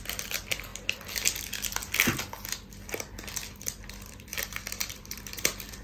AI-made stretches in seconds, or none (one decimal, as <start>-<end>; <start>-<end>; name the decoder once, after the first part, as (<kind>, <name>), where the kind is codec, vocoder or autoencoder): 0.0-0.7 (vocoder, BigVGAN v2); 3.5-5.8